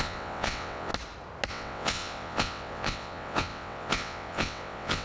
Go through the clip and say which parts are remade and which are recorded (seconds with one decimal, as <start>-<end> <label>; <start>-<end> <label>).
0.0-0.9 remade; 0.9-1.5 recorded; 1.5-5.0 remade